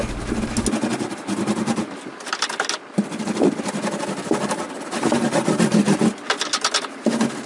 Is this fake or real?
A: real